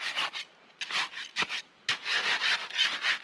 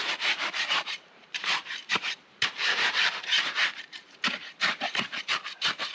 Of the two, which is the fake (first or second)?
second